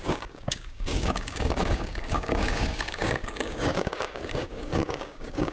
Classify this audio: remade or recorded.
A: remade